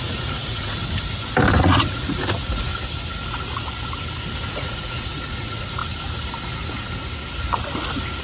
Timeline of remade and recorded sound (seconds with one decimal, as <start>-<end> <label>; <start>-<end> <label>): 0.0-0.8 remade; 0.8-1.6 recorded; 1.6-2.7 remade; 2.7-4.5 recorded; 4.5-5.8 remade; 5.8-8.2 recorded